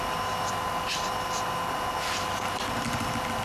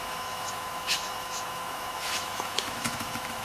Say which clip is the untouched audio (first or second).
first